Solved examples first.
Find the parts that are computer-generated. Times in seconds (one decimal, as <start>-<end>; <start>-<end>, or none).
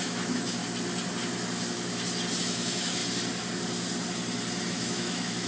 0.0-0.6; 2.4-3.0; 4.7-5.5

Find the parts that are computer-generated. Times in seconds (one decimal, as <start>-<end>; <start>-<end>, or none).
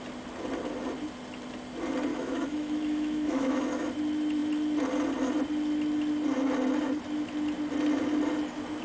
2.1-3.6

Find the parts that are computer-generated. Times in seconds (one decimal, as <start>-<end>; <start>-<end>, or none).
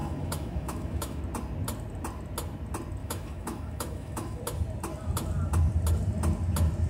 0.0-1.2; 3.0-4.4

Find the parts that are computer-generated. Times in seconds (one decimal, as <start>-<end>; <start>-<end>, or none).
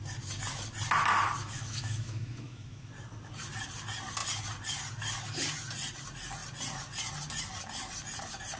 1.4-2.9